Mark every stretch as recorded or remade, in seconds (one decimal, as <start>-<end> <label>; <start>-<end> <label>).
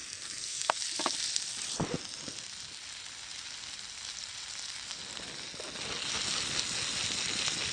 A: 0.0-0.8 remade; 0.8-7.7 recorded